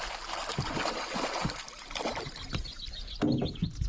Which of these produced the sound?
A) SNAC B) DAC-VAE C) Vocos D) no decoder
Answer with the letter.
D